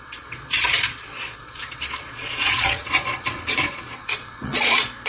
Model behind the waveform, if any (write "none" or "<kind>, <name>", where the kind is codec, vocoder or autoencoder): vocoder, Vocos